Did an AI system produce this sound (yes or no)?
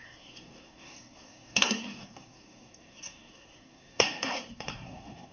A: yes